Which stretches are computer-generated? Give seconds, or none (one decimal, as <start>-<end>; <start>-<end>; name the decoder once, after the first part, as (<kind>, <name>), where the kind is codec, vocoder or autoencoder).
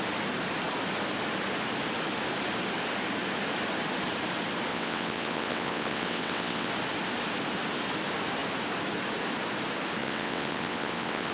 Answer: 4.7-6.7 (vocoder, WaveNeXt); 10.0-11.3